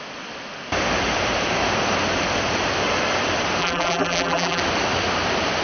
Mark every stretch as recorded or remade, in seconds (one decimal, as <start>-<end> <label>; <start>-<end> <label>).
0.0-3.6 recorded; 3.6-4.6 remade; 4.6-5.6 recorded